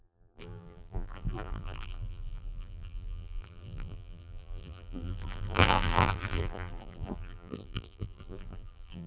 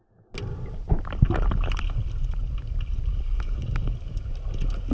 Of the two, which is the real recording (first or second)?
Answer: second